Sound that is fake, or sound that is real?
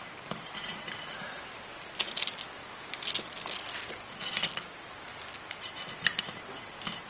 real